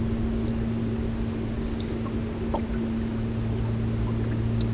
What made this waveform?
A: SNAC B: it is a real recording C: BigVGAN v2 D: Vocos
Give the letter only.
B